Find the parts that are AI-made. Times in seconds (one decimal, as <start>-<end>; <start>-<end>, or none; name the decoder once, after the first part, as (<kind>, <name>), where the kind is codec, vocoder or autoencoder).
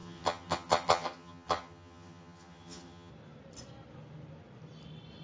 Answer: 0.0-3.1 (vocoder, HiFi-GAN)